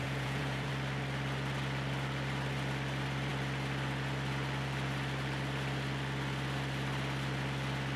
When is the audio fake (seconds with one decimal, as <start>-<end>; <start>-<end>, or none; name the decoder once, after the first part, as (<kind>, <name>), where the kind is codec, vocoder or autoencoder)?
0.0-0.7 (vocoder, Vocos)